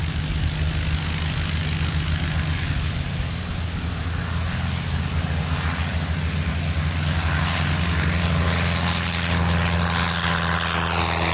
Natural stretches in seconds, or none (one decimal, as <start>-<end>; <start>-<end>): 0.0-11.3